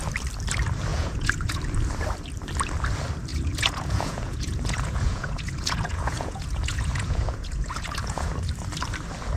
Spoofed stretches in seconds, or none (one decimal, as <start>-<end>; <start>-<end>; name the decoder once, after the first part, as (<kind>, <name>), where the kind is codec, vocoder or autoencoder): 0.9-1.6 (vocoder, Vocos); 3.3-8.3